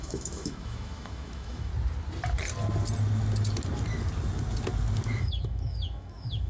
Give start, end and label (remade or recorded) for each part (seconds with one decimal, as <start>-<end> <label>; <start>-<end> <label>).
0.0-1.7 remade; 1.7-5.2 recorded; 5.2-6.5 remade